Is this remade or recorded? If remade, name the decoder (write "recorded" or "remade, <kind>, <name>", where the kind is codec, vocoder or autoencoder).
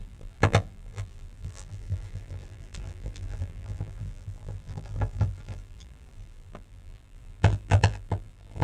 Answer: remade, vocoder, BigVGAN v2